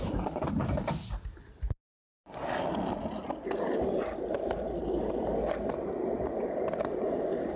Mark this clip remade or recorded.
recorded